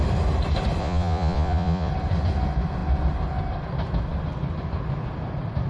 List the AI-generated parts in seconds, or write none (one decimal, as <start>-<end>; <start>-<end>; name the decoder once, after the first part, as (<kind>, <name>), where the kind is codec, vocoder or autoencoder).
0.8-1.9 (vocoder, Vocos)